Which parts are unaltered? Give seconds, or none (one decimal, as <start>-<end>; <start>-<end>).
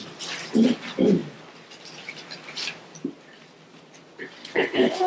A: 0.0-4.4